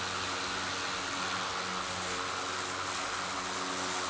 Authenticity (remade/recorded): recorded